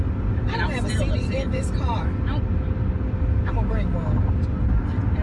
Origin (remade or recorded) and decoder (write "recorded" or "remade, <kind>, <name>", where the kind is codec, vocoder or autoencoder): recorded